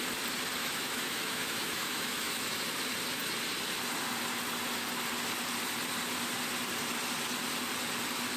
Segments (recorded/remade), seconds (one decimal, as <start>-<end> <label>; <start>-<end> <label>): 0.0-0.6 recorded; 0.6-2.6 remade; 2.6-8.4 recorded